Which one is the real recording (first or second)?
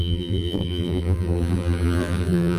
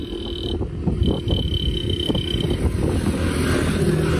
second